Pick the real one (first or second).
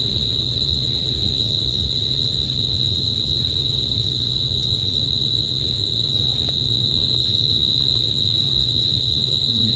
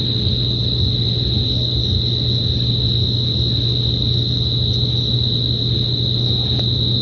second